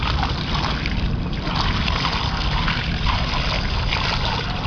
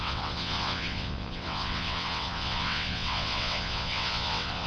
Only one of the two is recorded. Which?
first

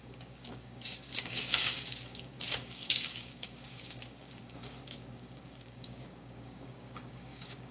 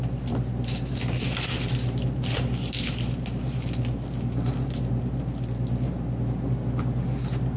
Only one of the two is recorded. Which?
second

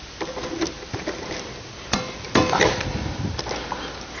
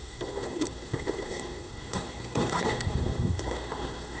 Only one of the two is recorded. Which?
first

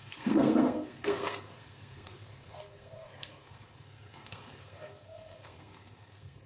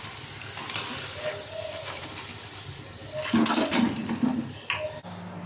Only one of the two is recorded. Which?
second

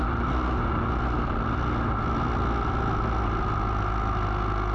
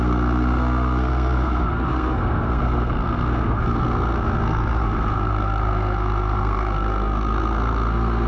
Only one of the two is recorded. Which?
first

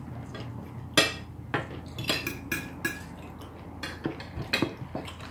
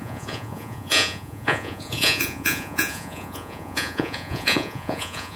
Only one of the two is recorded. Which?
first